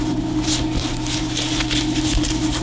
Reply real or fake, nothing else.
real